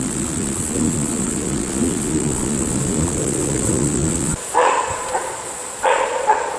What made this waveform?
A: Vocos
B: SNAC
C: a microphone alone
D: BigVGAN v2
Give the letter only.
A